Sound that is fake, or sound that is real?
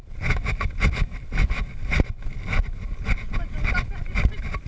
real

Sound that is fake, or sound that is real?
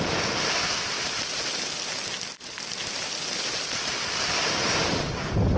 real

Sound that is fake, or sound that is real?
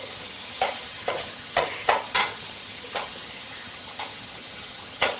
fake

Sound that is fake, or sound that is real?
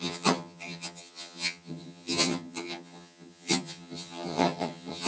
fake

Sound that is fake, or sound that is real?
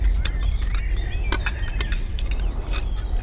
real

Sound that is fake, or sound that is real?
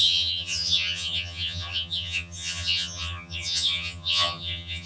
fake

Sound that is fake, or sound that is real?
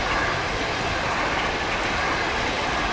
real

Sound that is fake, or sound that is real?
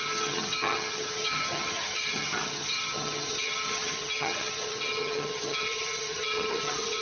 fake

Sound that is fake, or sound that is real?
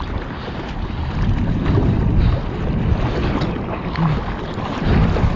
real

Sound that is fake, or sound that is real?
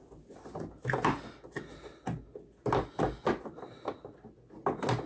real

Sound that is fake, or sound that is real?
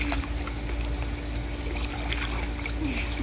real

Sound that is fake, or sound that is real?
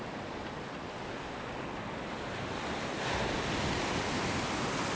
real